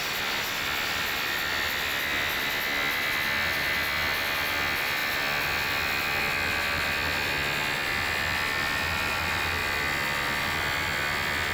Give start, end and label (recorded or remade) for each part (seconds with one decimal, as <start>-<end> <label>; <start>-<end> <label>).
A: 0.0-11.5 recorded